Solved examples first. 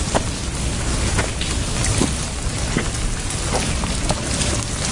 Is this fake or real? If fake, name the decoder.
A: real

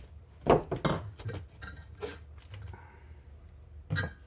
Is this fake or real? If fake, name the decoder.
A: real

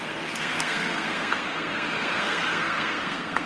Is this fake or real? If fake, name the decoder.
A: fake, codec, SNAC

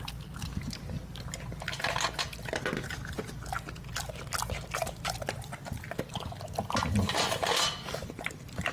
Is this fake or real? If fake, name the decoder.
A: real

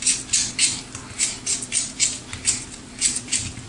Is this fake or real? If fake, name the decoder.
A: real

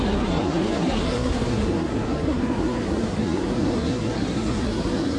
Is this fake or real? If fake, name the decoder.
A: fake, codec, SNAC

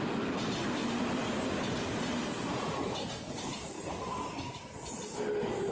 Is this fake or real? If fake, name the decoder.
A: real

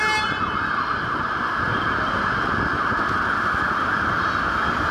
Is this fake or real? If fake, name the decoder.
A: real